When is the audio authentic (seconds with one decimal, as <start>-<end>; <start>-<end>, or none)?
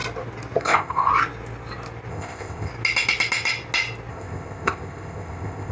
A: 0.0-0.6; 1.1-2.1; 2.7-4.1